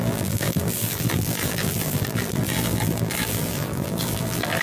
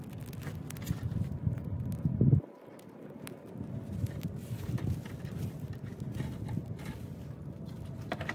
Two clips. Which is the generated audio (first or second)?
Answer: first